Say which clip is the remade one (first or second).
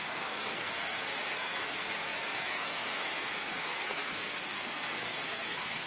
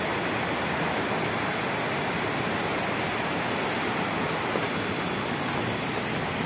first